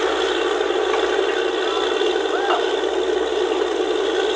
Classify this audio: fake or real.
real